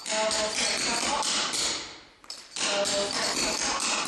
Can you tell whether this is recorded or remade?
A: recorded